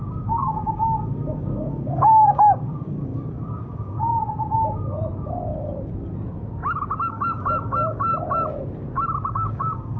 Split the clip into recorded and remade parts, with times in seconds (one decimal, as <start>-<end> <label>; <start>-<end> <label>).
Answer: 0.0-4.1 remade; 4.1-7.0 recorded; 7.0-8.1 remade; 8.1-9.3 recorded; 9.3-10.0 remade